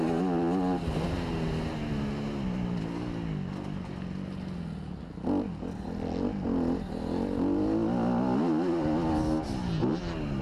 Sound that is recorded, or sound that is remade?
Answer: recorded